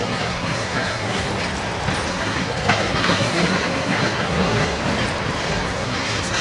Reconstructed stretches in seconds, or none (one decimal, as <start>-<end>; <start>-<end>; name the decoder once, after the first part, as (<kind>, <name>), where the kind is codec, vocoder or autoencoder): 0.0-1.3 (codec, SNAC); 2.1-4.8; 5.5-6.4